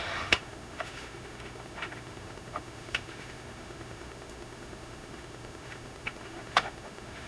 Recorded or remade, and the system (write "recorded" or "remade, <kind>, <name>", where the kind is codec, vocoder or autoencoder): remade, autoencoder, DAC-VAE